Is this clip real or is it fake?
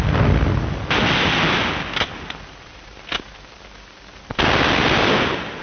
real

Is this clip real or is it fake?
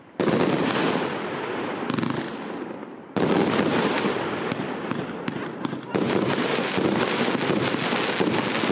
real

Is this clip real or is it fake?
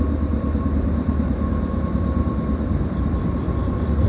real